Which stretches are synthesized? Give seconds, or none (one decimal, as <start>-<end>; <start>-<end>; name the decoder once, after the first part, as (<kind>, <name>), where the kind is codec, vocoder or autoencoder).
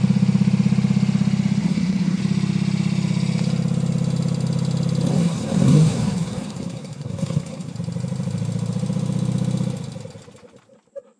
1.6-2.2 (codec, SNAC); 5.1-7.7